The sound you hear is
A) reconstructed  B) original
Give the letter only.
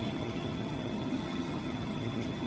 A